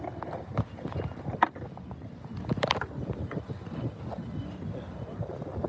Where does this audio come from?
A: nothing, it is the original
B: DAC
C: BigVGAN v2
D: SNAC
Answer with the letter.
A